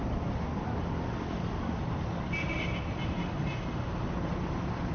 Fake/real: real